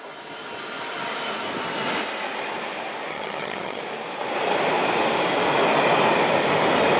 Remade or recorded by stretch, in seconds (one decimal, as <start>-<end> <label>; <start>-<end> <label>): 0.0-3.1 recorded; 3.1-3.8 remade; 3.8-7.0 recorded